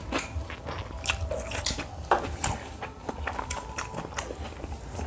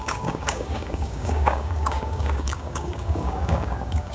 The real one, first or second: first